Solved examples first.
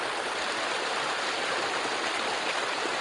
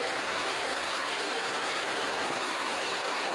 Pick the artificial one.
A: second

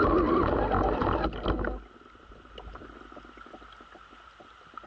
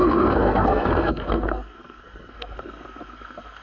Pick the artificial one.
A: second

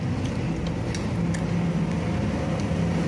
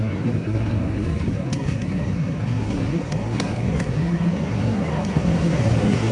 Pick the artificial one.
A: second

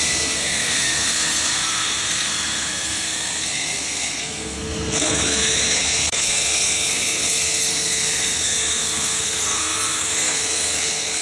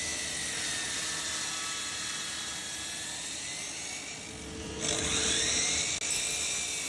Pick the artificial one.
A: first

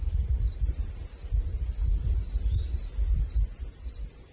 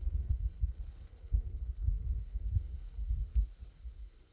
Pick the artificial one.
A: second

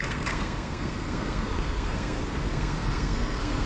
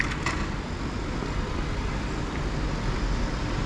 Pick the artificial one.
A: first